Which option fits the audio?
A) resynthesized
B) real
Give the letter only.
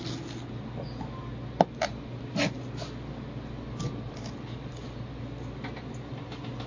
B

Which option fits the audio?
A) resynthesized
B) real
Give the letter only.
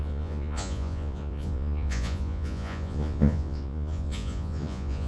A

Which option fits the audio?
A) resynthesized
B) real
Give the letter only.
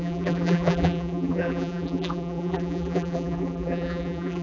A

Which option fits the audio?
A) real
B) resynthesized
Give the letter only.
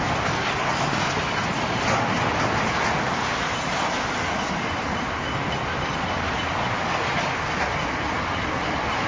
A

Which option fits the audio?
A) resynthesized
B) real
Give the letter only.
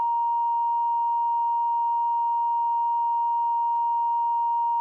B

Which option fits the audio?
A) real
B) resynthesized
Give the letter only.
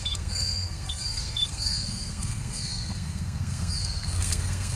B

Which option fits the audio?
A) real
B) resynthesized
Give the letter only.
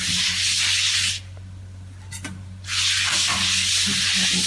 A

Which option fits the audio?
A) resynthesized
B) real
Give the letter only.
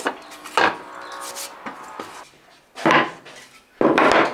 B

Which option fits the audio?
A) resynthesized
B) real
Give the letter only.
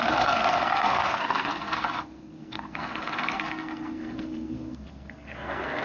A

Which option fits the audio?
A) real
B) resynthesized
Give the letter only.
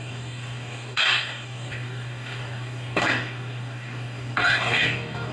B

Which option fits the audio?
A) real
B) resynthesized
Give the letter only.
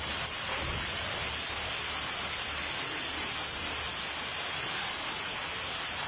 A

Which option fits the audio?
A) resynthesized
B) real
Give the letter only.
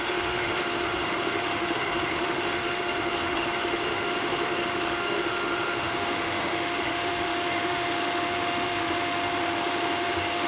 A